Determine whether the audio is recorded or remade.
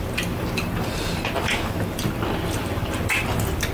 remade